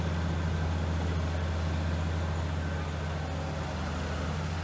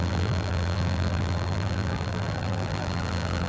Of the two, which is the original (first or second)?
first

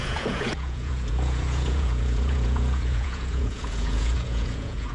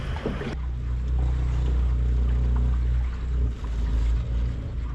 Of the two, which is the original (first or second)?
second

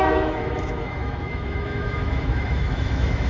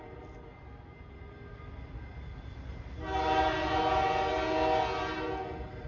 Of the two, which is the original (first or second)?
second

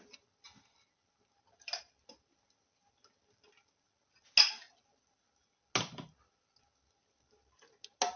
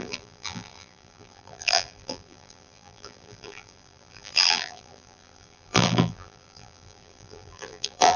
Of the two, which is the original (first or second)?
first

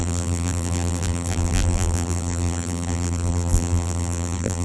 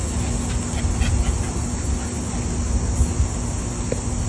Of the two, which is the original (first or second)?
second